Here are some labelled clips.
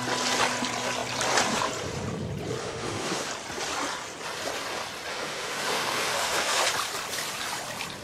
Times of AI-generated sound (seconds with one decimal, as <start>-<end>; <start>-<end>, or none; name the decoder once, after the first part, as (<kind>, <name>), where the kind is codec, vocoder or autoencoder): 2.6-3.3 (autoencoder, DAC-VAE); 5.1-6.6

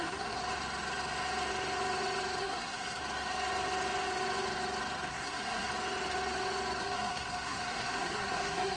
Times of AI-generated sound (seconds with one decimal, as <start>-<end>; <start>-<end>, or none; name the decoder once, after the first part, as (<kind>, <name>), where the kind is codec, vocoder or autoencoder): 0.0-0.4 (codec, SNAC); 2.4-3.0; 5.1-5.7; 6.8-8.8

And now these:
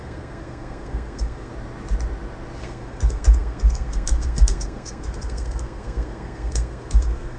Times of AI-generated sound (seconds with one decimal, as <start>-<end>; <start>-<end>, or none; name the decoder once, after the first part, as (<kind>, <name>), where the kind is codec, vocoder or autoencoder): 0.0-1.5 (codec, SNAC); 2.6-7.4

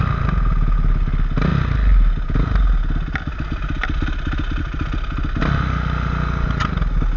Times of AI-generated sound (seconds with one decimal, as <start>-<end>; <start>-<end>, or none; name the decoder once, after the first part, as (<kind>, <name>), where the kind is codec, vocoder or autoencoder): none